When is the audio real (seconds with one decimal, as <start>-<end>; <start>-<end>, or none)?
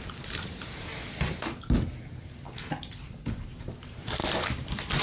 0.9-3.6; 4.2-5.0